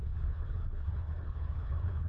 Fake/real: fake